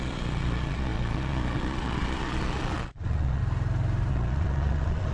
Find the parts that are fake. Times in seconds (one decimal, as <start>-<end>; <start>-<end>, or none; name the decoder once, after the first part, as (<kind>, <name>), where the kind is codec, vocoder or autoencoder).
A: 0.0-3.4 (vocoder, Vocos); 4.1-5.1